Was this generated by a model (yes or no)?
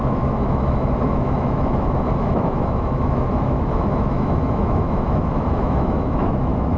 yes